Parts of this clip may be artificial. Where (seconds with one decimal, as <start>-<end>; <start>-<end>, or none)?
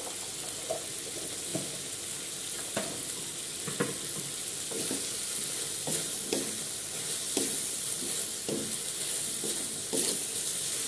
none